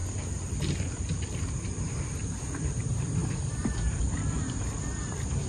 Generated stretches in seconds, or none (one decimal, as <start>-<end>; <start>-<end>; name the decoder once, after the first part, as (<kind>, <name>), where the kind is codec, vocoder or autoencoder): none